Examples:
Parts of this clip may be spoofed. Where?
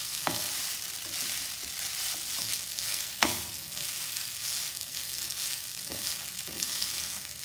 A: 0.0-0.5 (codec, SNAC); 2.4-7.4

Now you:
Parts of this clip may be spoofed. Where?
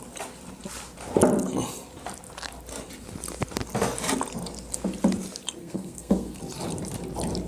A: 5.6-6.4 (codec, SNAC)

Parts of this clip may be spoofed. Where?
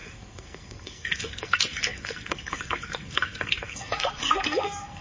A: 0.0-5.0 (codec, SNAC)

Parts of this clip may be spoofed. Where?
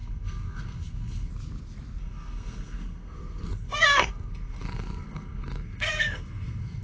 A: 0.0-1.3 (codec, SNAC); 2.0-6.8